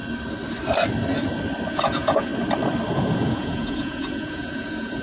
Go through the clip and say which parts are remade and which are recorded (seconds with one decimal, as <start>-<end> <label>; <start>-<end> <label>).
0.0-1.7 recorded; 1.7-2.3 remade; 2.3-2.9 recorded; 2.9-5.0 remade